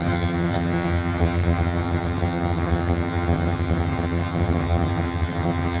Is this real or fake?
fake